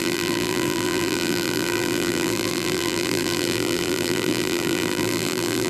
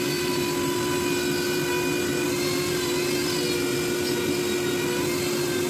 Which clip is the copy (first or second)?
first